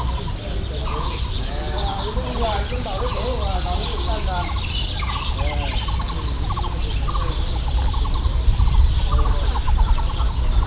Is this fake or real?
real